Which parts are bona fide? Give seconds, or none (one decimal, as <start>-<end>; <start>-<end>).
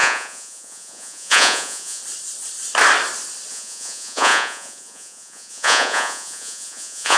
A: 2.0-3.5